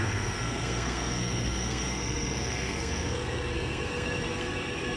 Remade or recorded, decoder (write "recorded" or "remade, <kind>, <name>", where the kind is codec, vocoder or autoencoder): remade, codec, SNAC